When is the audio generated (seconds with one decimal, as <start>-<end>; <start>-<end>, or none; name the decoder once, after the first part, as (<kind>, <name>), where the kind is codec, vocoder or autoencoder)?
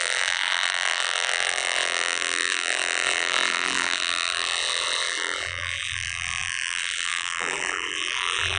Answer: 0.0-8.6 (vocoder, BigVGAN v2)